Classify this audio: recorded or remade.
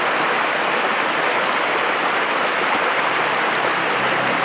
recorded